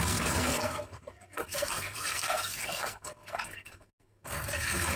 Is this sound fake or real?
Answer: fake